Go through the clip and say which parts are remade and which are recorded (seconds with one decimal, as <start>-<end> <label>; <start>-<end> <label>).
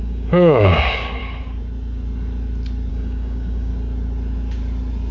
0.0-1.2 remade; 1.2-2.9 recorded; 2.9-3.7 remade; 3.7-5.1 recorded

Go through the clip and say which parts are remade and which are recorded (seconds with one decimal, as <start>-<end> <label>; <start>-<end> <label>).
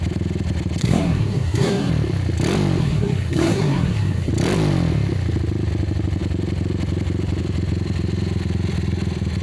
0.0-0.8 recorded; 0.8-1.9 remade; 1.9-2.8 recorded; 2.8-4.3 remade; 4.3-9.4 recorded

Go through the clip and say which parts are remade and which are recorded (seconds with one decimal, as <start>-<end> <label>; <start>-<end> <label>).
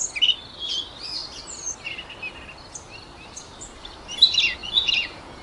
0.0-4.6 recorded; 4.6-5.4 remade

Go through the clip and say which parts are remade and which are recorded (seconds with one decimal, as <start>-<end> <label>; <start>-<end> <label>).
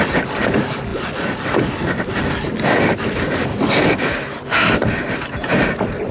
0.0-0.9 recorded; 0.9-2.3 remade; 2.3-6.1 recorded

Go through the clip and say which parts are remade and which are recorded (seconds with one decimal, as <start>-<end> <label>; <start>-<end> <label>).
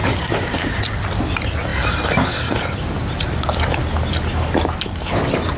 0.0-0.8 remade; 0.8-5.6 recorded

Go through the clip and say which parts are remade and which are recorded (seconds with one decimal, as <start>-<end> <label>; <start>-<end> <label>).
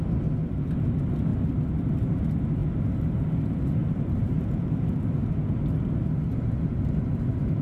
0.0-3.8 recorded; 3.8-4.9 remade; 4.9-7.6 recorded